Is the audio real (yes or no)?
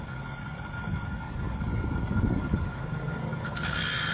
no